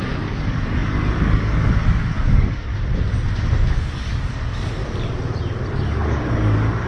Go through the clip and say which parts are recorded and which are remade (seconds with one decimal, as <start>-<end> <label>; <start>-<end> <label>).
0.0-2.7 remade; 2.7-3.7 recorded; 3.7-4.8 remade; 4.8-5.7 recorded; 5.7-6.9 remade